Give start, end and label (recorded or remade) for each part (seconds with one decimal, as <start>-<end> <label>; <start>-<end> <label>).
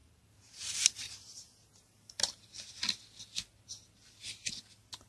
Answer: 0.0-2.6 remade; 2.6-5.1 recorded